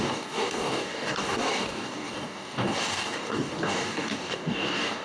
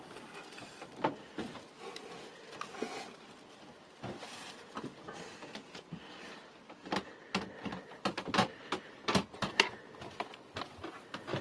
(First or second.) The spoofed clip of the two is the first